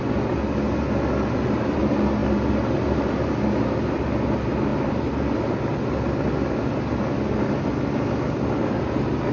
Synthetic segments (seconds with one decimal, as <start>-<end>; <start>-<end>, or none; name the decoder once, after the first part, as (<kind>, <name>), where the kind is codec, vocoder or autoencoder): none